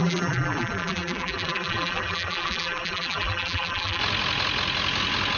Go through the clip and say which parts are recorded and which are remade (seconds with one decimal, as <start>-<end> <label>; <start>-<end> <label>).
0.0-4.0 remade; 4.0-5.4 recorded